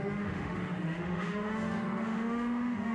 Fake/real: fake